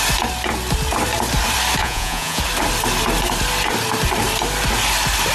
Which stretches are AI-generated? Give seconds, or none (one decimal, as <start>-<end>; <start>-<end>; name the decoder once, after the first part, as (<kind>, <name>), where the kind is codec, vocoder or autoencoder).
1.8-2.4 (vocoder, Vocos)

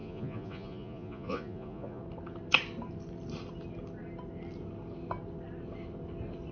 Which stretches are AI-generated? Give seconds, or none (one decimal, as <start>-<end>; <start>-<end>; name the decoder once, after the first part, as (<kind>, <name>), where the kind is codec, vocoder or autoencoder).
0.0-2.0 (vocoder, Vocos)

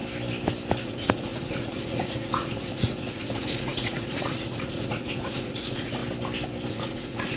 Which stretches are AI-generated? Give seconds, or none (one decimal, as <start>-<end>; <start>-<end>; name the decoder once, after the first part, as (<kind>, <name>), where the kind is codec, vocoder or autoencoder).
0.8-6.0 (vocoder, Vocos); 6.7-7.4

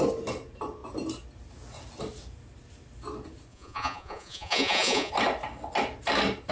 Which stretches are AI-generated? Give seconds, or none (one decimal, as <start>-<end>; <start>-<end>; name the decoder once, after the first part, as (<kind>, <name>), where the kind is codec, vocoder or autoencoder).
3.5-5.1 (vocoder, Vocos)

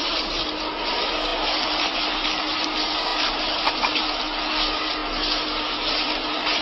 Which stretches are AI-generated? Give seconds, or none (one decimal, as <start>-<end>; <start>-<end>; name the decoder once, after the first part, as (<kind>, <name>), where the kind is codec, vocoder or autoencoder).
none

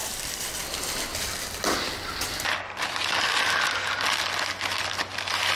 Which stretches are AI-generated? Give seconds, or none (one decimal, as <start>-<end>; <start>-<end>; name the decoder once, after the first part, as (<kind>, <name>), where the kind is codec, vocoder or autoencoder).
none